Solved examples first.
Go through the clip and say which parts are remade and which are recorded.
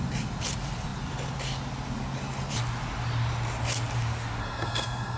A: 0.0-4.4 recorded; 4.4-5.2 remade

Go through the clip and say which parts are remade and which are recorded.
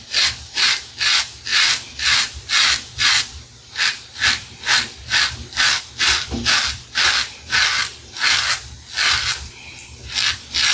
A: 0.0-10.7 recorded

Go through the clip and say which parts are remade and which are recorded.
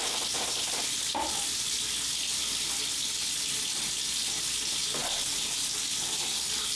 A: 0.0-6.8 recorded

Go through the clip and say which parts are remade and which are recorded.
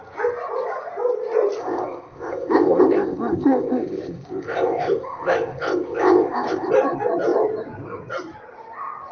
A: 0.0-1.6 recorded; 1.6-6.7 remade; 6.7-9.1 recorded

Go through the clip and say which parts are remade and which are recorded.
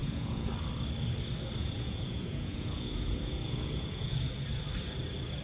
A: 0.0-0.5 remade; 0.5-1.6 recorded; 1.6-4.3 remade; 4.3-5.4 recorded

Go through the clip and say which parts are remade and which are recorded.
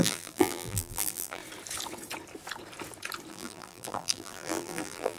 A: 0.0-1.4 remade; 1.4-3.3 recorded; 3.3-5.2 remade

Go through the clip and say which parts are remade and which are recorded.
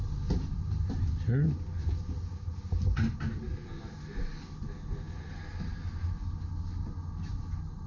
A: 0.0-7.9 recorded